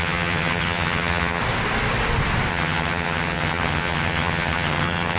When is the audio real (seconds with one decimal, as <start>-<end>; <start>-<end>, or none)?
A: 1.4-2.5